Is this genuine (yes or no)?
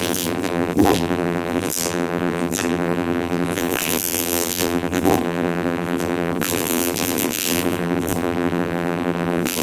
no